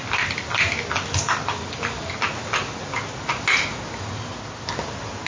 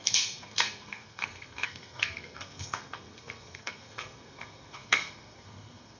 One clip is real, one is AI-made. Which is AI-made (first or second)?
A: second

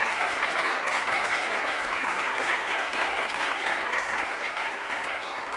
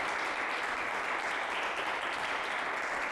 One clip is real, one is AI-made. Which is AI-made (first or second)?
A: first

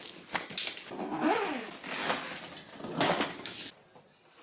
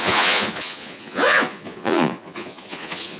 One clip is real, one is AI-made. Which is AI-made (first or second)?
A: second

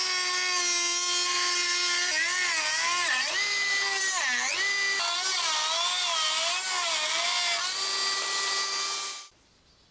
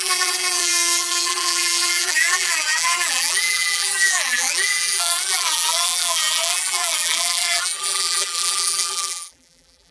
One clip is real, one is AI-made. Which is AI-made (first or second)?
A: second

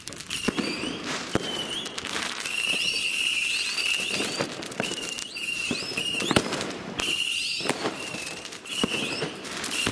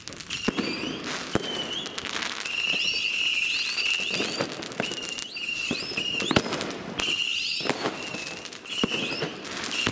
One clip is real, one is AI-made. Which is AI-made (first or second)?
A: first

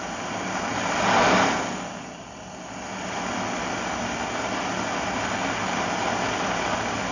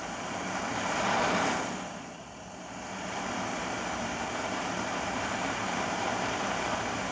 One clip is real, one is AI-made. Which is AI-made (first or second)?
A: second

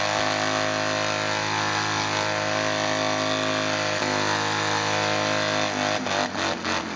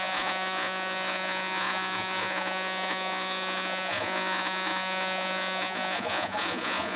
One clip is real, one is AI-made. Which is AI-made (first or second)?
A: second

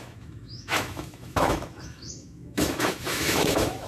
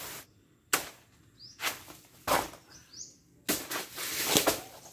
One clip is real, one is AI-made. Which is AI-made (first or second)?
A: first